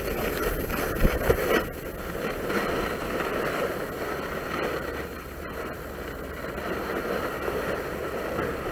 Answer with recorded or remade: recorded